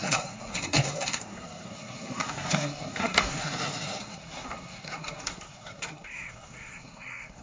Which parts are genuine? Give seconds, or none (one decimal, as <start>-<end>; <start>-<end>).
none